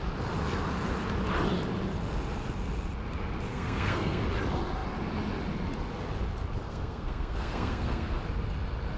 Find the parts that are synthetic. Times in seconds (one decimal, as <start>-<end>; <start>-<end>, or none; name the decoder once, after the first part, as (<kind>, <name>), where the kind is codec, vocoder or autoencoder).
3.5-4.2 (codec, SNAC); 6.6-8.2